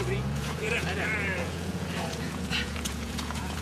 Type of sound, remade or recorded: remade